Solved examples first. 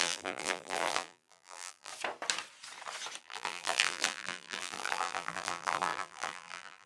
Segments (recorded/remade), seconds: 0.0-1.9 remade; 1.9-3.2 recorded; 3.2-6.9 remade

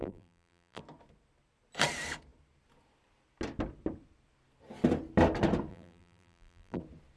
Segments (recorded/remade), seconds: 0.0-0.8 remade; 0.8-5.7 recorded; 5.7-6.8 remade; 6.8-7.2 recorded

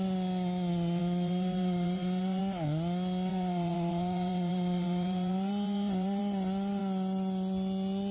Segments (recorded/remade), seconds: 0.0-1.0 recorded; 1.0-2.4 remade; 2.4-3.3 recorded; 3.3-6.2 remade; 6.2-8.1 recorded

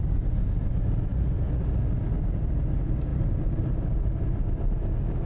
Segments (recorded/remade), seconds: 0.0-3.1 recorded; 3.1-4.2 remade; 4.2-5.3 recorded

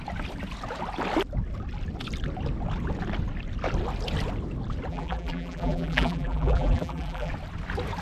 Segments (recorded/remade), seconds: 0.0-4.9 recorded; 4.9-7.3 remade; 7.3-8.0 recorded

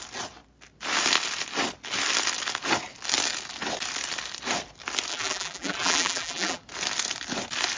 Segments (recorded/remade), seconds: 0.0-5.1 recorded; 5.1-6.6 remade; 6.6-7.8 recorded